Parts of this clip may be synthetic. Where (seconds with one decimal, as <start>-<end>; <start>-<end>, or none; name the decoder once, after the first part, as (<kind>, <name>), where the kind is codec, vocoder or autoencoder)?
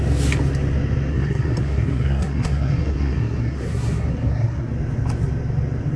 1.1-4.7 (codec, SNAC)